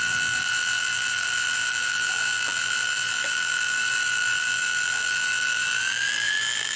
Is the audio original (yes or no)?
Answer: no